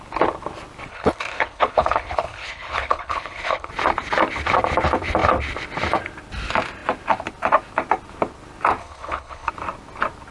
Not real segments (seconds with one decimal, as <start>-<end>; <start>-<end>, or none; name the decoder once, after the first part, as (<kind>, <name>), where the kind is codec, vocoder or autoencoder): 0.9-3.7 (codec, HILCodec); 8.8-9.5